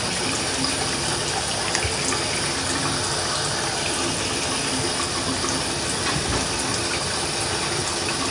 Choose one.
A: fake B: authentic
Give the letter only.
B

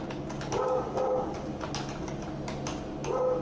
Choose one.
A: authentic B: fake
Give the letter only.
A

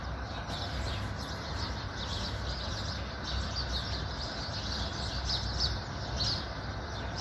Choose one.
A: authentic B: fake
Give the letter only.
A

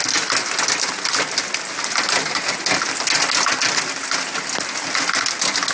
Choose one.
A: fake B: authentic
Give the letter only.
B